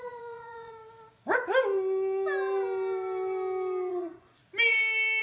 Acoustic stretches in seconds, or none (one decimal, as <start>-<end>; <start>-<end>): 0.8-3.9; 4.4-5.2